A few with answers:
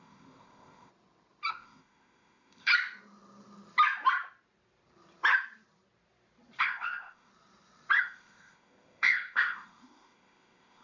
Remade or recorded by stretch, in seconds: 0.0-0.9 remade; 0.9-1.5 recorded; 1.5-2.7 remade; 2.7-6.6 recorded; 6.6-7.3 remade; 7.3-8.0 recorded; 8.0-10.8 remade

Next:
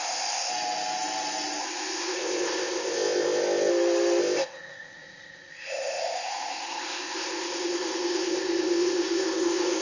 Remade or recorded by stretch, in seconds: 0.0-0.5 remade; 0.5-1.6 recorded; 1.6-3.7 remade; 3.7-4.2 recorded; 4.2-9.8 remade

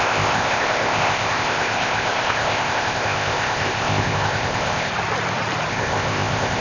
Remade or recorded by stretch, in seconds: 0.0-4.9 remade; 4.9-5.7 recorded; 5.7-6.6 remade

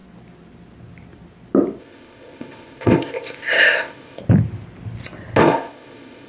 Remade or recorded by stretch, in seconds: 0.0-1.8 recorded; 1.8-4.2 remade; 4.2-5.4 recorded; 5.4-6.3 remade

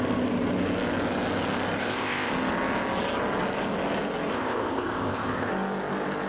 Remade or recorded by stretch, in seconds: 0.0-1.8 recorded; 1.8-2.3 remade; 2.3-4.3 recorded; 4.3-5.5 remade; 5.5-6.3 recorded

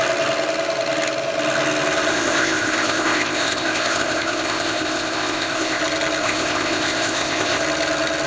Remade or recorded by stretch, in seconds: 0.0-2.1 recorded; 2.1-5.8 remade; 5.8-6.2 recorded; 6.2-7.6 remade; 7.6-8.3 recorded

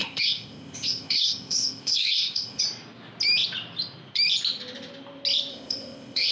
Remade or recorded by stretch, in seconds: 0.0-2.6 remade; 2.6-5.5 recorded; 5.5-6.3 remade

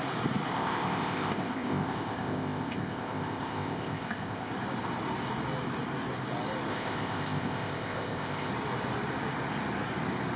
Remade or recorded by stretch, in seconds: 0.0-0.5 recorded; 0.5-4.5 remade; 4.5-6.7 recorded; 6.7-8.5 remade; 8.5-10.4 recorded